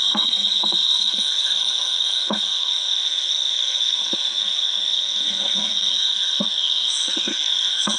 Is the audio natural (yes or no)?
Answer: no